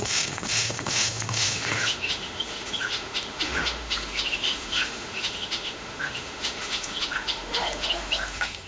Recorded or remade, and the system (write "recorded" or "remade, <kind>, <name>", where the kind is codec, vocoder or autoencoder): remade, autoencoder, DAC-VAE